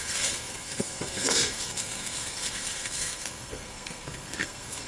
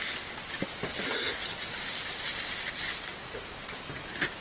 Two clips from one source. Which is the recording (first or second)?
second